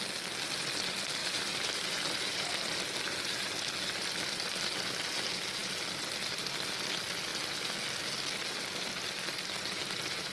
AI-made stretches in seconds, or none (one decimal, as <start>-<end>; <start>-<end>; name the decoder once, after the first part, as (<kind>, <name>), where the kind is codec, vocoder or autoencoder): 1.2-2.5 (vocoder, BigVGAN v2)